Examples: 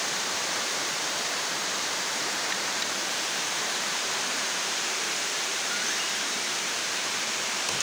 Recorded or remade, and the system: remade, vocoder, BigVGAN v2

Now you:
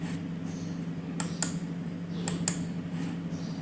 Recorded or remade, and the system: recorded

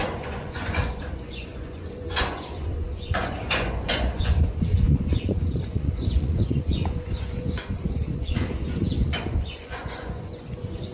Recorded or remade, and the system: remade, vocoder, Vocos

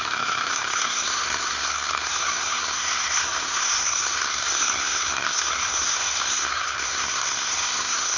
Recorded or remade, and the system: remade, codec, SNAC